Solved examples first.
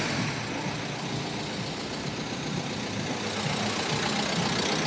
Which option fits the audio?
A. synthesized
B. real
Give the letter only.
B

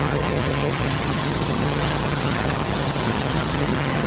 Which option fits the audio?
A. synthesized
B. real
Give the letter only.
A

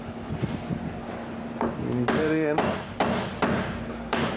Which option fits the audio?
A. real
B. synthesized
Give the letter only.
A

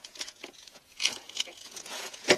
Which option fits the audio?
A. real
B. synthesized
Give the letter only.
B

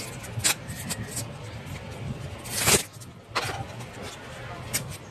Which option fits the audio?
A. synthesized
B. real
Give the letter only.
B